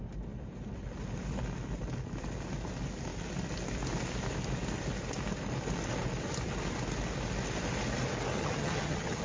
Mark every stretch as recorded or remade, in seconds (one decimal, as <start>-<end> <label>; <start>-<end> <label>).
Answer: 0.0-8.3 recorded; 8.3-9.2 remade